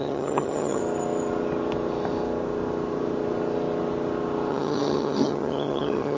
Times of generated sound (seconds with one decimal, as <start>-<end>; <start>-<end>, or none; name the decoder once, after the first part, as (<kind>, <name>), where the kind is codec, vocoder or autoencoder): 0.0-0.8 (vocoder, HiFi-GAN); 4.5-6.2